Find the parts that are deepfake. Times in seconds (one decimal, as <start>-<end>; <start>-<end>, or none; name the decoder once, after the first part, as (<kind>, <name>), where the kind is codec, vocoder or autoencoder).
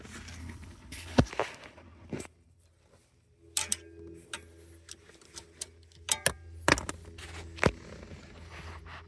0.4-1.3 (codec, HILCodec)